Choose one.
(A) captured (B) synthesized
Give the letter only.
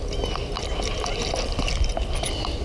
A